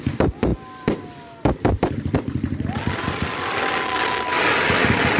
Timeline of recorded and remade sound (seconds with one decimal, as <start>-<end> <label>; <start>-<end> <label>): 0.0-5.2 recorded